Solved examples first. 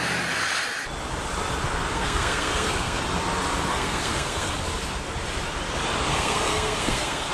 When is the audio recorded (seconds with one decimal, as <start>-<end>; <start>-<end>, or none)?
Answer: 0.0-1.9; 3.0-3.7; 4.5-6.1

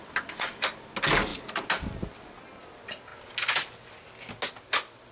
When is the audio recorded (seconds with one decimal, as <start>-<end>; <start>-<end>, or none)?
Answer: 0.0-5.1

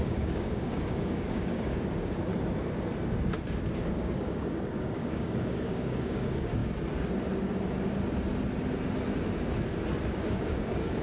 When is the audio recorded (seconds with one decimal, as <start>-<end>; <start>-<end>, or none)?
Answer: 2.3-3.9; 6.6-10.1